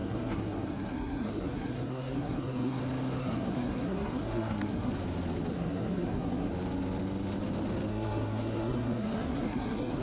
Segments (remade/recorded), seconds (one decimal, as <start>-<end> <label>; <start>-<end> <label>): 0.0-2.8 remade; 2.8-3.2 recorded; 3.2-4.9 remade; 4.9-5.5 recorded; 5.5-6.5 remade; 6.5-7.9 recorded; 7.9-10.0 remade